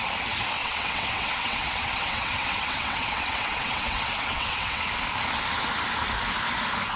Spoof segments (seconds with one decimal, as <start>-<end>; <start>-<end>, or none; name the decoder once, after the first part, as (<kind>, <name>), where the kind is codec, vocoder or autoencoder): 0.6-4.8 (vocoder, WaveNeXt)